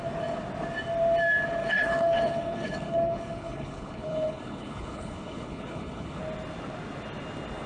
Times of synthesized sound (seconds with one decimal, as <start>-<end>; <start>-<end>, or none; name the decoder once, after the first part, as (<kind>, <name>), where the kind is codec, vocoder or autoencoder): 1.6-6.2 (codec, HILCodec)